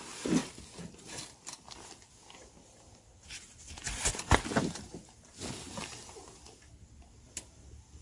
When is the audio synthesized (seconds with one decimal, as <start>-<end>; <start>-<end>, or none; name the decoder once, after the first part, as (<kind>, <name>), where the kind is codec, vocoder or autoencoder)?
none